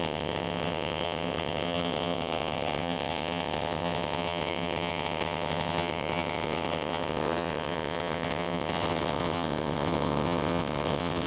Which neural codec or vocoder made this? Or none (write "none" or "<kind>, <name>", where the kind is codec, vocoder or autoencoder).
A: vocoder, WaveNeXt